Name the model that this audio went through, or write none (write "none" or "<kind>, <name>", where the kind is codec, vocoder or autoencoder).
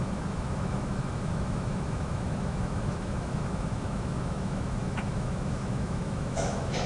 autoencoder, DAC-VAE